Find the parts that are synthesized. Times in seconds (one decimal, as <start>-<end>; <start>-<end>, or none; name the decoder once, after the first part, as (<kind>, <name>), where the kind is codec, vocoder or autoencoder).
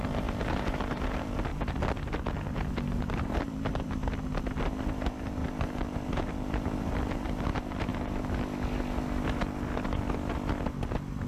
0.0-1.5 (vocoder, BigVGAN v2); 3.0-4.0; 4.6-7.9